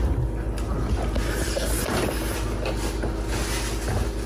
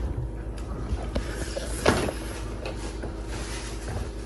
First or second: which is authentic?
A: first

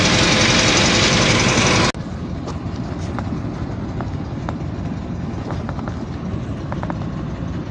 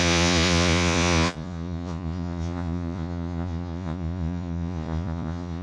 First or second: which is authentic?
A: first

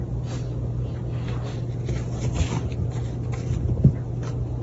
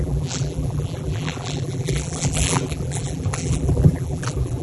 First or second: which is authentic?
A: first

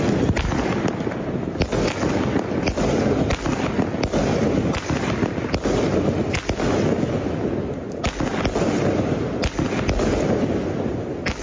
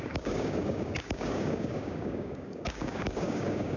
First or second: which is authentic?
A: first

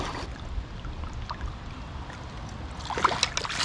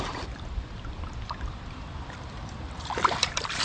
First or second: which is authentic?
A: first